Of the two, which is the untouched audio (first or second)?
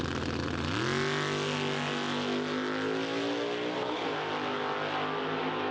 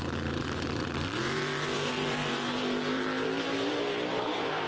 first